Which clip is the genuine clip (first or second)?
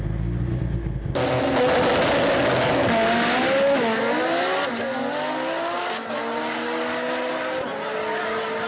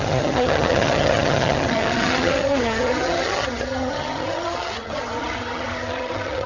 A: first